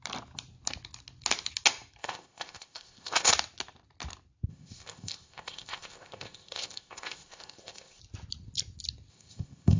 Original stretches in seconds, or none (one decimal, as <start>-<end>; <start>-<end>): 0.0-2.0; 3.3-4.5; 8.0-9.1